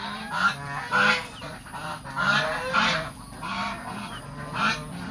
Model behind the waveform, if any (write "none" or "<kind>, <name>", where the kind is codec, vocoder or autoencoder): none